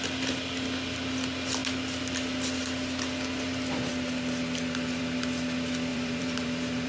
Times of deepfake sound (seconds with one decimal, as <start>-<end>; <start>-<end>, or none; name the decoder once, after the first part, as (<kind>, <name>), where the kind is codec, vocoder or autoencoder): 5.9-6.9 (vocoder, BigVGAN v2)